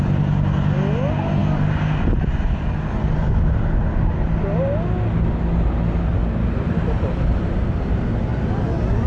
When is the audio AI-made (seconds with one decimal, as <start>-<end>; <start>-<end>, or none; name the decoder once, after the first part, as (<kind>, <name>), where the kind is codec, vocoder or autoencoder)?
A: none